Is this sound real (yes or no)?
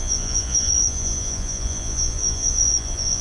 no